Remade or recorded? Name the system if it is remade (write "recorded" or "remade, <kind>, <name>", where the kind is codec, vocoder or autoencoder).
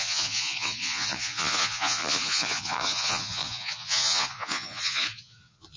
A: remade, vocoder, Vocos